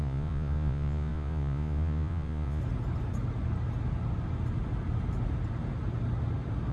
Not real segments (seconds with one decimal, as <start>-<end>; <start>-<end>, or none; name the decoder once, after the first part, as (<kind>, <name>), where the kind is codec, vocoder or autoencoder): 0.0-2.6 (vocoder, Vocos)